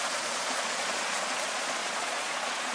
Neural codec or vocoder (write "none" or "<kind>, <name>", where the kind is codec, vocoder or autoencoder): vocoder, Vocos